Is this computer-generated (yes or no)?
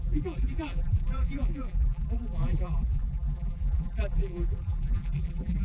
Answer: yes